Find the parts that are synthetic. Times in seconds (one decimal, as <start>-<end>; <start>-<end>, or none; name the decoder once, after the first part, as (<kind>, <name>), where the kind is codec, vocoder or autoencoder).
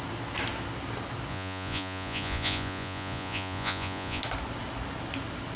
1.3-4.2 (vocoder, Vocos)